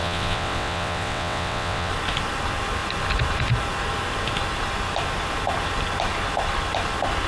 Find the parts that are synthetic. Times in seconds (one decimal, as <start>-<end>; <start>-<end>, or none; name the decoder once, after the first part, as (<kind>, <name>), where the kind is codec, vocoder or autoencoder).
0.0-1.9 (vocoder, WaveNeXt)